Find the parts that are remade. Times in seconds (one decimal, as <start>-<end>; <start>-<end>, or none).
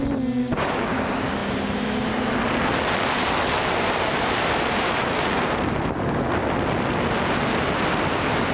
0.4-1.0